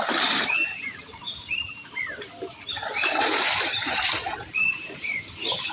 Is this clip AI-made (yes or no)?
yes